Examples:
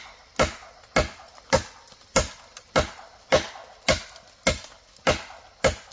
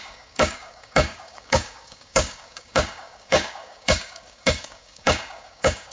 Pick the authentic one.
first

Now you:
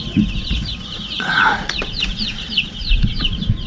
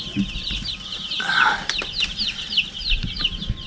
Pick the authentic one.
second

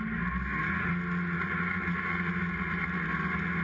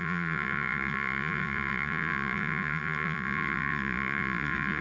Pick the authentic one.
first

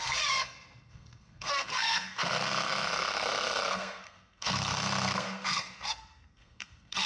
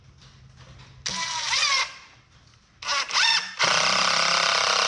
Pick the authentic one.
second